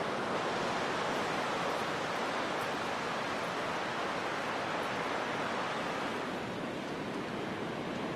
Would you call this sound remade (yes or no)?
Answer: no